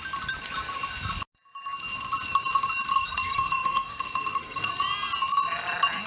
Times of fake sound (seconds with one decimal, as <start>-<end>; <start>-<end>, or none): 2.9-4.7

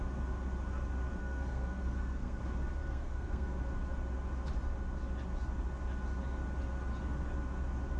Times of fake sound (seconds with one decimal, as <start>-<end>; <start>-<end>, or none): 1.2-2.4; 2.8-3.6

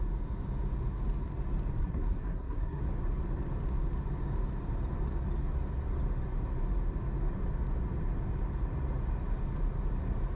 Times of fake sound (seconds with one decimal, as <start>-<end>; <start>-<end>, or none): 1.8-2.8

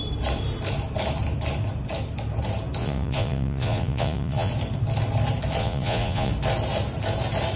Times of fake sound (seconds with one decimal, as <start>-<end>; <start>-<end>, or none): 2.8-4.5; 5.6-6.3